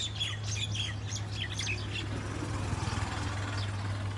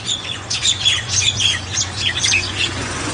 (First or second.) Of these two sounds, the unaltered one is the first